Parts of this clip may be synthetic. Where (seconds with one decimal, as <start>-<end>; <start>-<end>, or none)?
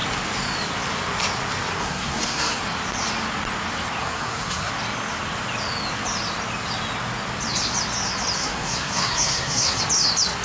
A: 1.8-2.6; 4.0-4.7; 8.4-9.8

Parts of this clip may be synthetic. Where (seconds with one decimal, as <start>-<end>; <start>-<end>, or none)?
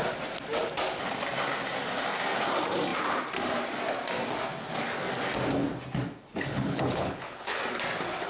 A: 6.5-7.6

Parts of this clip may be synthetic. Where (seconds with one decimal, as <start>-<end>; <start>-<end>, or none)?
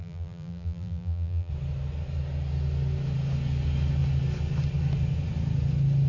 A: 0.0-1.5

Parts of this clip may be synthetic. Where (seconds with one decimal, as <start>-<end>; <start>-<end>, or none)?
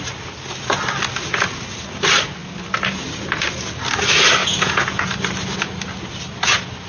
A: 4.4-5.1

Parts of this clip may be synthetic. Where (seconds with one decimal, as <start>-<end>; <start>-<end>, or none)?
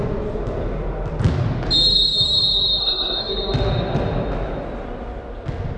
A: 2.8-3.3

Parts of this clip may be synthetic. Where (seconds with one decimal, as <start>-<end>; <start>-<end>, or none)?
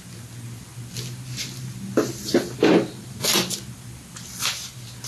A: none